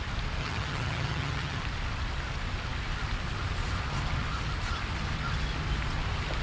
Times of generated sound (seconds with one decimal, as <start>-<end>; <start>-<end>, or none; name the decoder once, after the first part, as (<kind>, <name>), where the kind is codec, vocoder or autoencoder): 0.4-1.6 (vocoder, HiFi-GAN)